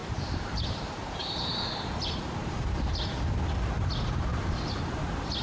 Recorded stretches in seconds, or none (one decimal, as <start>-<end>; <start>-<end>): 1.5-4.3; 4.8-5.4

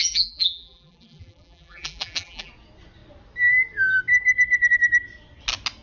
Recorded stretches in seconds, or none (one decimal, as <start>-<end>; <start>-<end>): 2.5-5.8

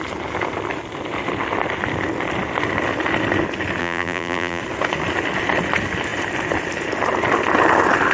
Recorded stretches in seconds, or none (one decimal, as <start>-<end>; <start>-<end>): 0.0-3.8; 4.6-8.1

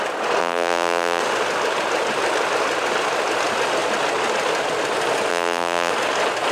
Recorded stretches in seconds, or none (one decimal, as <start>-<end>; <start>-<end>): 0.0-0.4; 1.2-5.3; 5.9-6.5

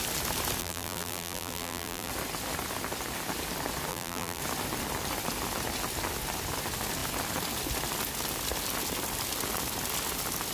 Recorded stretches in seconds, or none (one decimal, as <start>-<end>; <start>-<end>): 0.0-0.6; 2.1-3.9; 4.4-10.5

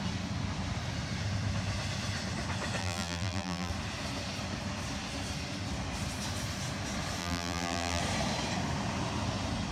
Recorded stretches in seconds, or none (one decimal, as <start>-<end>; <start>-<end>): 0.0-2.8; 3.7-7.2; 8.0-9.7